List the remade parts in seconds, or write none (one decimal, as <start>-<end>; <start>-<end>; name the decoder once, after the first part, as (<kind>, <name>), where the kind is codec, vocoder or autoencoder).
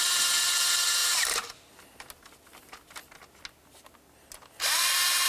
none